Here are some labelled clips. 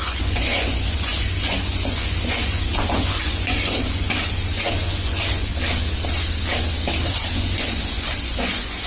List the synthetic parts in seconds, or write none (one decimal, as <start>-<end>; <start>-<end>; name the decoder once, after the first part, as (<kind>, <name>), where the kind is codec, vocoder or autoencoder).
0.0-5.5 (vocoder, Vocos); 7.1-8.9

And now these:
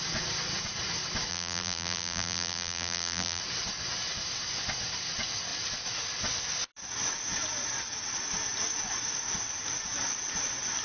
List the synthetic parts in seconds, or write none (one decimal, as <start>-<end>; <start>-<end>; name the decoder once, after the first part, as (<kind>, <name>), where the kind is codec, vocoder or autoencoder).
1.3-3.4 (vocoder, BigVGAN v2)

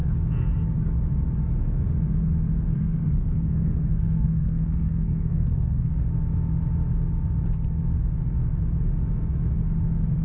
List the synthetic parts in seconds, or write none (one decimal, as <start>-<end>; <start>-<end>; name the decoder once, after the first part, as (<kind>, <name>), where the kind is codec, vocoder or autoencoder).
2.7-5.9 (codec, SNAC)

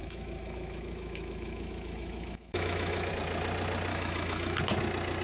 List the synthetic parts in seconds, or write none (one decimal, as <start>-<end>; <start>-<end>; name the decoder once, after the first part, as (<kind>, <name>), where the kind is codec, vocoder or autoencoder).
0.0-3.1 (autoencoder, DAC-VAE); 3.9-4.6